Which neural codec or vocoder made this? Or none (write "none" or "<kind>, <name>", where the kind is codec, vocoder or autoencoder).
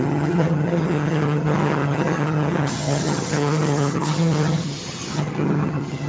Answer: vocoder, HiFi-GAN